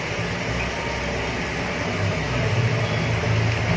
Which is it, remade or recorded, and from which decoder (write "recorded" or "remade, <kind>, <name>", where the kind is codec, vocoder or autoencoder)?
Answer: recorded